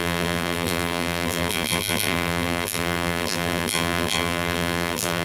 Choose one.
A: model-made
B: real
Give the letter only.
A